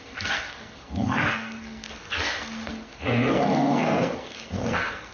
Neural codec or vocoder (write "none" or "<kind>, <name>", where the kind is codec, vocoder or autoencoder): codec, SNAC